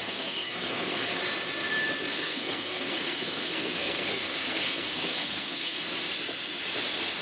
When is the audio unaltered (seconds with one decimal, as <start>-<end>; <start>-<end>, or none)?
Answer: 1.2-2.1; 5.8-7.2